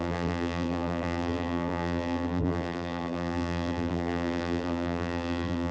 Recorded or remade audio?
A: remade